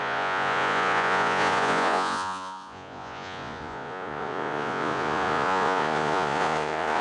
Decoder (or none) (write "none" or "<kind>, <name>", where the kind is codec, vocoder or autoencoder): vocoder, Vocos